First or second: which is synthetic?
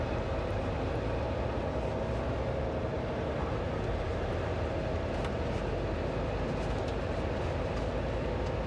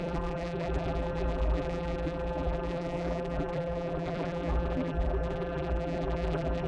second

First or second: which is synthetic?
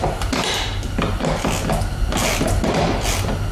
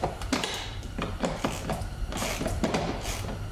second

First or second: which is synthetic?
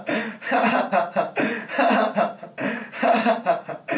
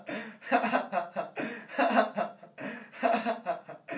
first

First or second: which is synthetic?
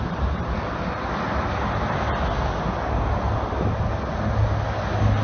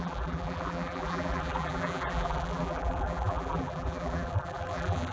second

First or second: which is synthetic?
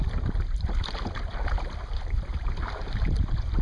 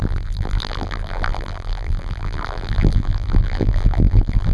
second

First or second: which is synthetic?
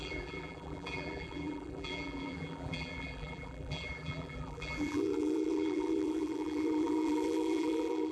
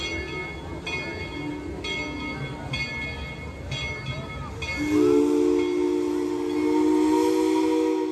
first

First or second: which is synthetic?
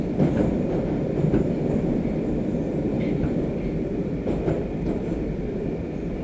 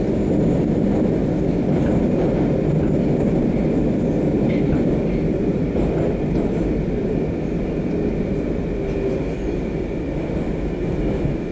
first